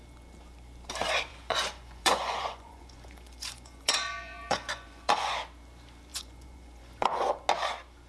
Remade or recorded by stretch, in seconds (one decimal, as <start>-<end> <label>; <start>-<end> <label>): 0.0-1.3 recorded; 1.3-5.3 remade; 5.3-6.1 recorded; 6.1-7.3 remade; 7.3-8.1 recorded